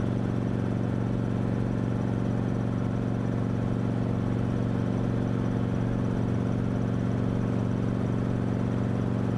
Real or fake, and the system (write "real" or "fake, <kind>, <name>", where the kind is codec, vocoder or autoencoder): real